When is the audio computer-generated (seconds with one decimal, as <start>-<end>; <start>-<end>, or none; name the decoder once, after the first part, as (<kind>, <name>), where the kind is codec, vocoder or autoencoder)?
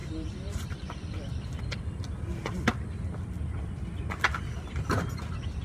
0.0-1.6 (vocoder, BigVGAN v2)